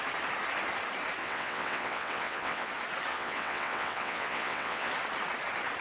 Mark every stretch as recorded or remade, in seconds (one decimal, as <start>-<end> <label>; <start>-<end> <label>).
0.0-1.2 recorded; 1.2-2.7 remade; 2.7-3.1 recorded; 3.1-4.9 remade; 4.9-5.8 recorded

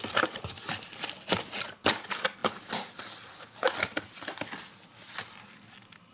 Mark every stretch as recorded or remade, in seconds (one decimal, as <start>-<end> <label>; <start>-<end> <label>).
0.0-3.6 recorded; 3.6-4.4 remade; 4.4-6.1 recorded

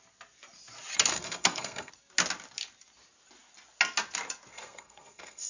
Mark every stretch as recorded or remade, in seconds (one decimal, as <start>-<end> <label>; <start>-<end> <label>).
0.0-1.1 recorded; 1.1-1.9 remade; 1.9-4.5 recorded; 4.5-5.5 remade

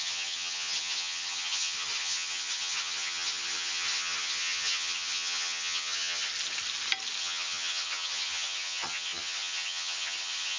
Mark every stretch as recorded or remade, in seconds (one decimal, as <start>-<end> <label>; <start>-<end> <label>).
0.0-6.3 remade; 6.3-7.2 recorded; 7.2-10.6 remade

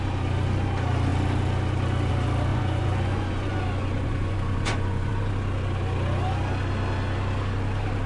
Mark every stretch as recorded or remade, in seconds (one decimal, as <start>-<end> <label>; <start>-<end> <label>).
0.0-2.5 recorded; 2.5-5.1 remade; 5.1-8.1 recorded